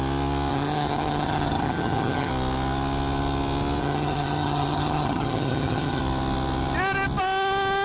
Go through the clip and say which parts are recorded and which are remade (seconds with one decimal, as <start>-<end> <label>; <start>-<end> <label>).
0.0-0.5 recorded; 0.5-2.3 remade; 2.3-3.8 recorded; 3.8-6.0 remade; 6.0-7.8 recorded